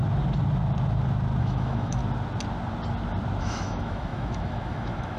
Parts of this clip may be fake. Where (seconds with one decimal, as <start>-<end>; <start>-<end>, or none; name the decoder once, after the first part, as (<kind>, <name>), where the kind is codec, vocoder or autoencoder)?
1.4-2.0 (autoencoder, DAC-VAE); 3.4-5.2